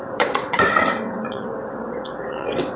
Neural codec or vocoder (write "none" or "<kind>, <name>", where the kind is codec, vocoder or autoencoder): vocoder, WaveNeXt